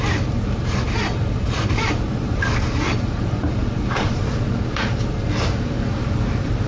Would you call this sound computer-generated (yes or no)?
yes